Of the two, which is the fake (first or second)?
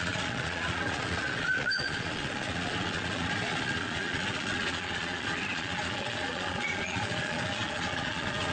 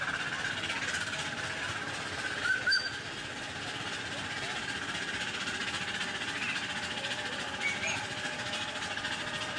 first